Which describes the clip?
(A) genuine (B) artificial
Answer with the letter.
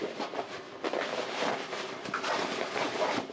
A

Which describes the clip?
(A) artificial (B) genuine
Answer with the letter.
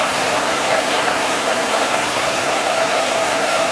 A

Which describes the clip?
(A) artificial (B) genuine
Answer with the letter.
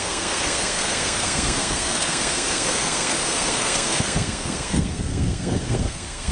A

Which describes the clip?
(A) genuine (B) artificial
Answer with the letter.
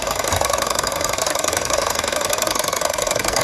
B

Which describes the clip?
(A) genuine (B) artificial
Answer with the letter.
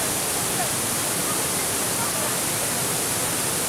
A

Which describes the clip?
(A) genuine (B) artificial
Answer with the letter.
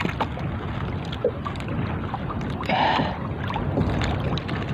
A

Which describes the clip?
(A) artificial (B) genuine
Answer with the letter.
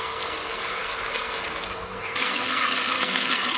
A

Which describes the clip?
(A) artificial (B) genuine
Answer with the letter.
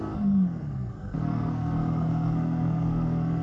A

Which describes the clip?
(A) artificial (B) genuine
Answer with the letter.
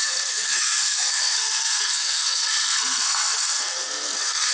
A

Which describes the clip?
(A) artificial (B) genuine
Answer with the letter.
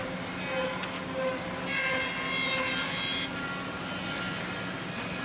B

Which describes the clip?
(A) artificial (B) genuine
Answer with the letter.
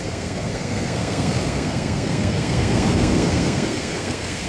A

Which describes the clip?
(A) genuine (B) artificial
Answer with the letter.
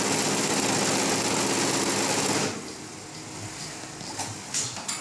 A